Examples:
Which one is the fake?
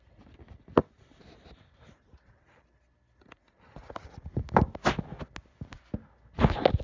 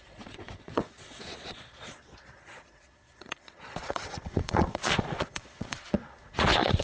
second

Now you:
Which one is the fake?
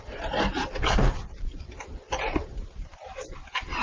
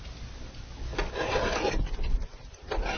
first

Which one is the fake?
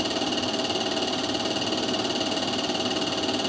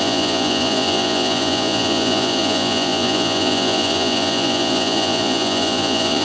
second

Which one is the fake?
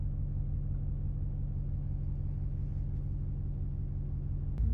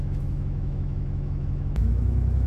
second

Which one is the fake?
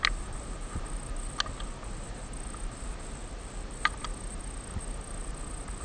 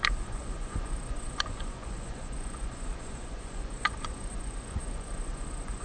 second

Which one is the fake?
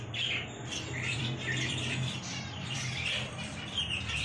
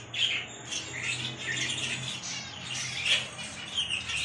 first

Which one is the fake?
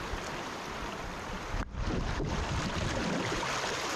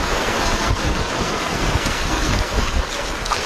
second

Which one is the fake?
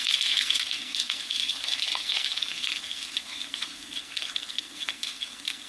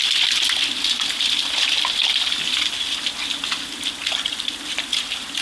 first